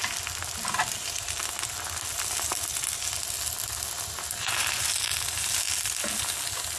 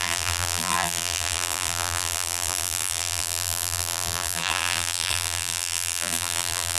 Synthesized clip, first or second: second